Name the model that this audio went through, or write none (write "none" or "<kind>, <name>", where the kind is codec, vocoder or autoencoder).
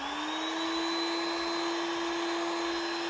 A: none